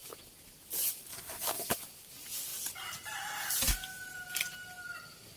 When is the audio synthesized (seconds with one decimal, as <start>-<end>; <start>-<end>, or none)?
1.1-1.7